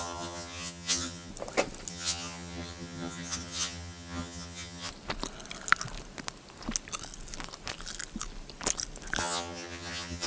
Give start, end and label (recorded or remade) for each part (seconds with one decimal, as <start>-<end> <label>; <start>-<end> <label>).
0.0-1.3 remade; 1.3-1.9 recorded; 1.9-4.9 remade; 4.9-9.2 recorded; 9.2-10.3 remade